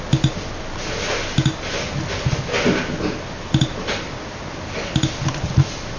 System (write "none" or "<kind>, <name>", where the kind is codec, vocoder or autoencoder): none